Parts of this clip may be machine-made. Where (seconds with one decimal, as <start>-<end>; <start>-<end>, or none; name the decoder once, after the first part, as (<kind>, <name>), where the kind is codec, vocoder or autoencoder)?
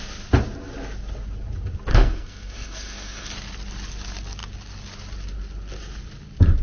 1.9-3.3 (codec, SNAC)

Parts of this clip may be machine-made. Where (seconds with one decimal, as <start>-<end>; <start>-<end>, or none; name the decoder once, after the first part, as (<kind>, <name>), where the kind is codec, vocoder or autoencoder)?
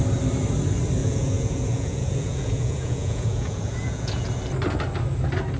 1.0-4.3 (vocoder, Vocos)